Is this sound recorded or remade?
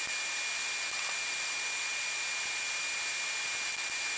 recorded